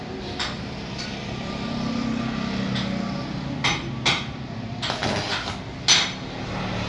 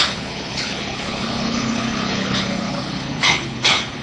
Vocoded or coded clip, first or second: second